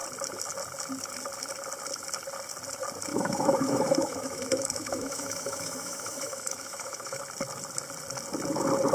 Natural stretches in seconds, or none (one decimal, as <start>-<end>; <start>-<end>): 0.0-3.1; 7.2-8.9